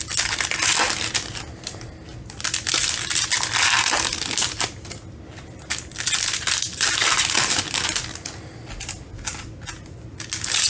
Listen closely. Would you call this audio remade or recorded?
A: recorded